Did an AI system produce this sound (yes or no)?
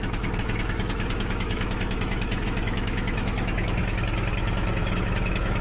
yes